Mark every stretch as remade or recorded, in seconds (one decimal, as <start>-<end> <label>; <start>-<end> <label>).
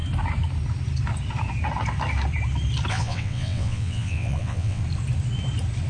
0.0-2.9 recorded; 2.9-4.8 remade; 4.8-5.9 recorded